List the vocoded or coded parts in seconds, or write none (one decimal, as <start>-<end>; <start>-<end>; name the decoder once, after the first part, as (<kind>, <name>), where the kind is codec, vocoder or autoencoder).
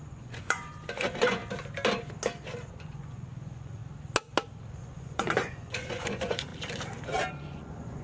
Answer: 0.0-1.4 (vocoder, Vocos); 2.7-3.8; 4.7-6.5; 7.3-8.0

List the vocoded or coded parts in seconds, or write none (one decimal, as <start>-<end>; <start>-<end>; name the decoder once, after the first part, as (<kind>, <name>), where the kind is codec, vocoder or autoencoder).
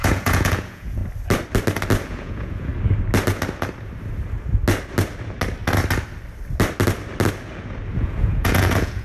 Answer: 0.0-1.0 (vocoder, Vocos); 2.1-2.7; 7.9-9.0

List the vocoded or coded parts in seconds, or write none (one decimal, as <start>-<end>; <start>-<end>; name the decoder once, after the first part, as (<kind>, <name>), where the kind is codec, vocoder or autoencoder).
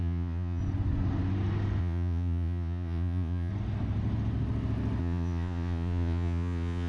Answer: 0.0-0.6 (vocoder, Vocos); 1.8-3.5; 5.0-6.9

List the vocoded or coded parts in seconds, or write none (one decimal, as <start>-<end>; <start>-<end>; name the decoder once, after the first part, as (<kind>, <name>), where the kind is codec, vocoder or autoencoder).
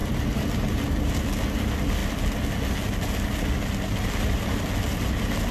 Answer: none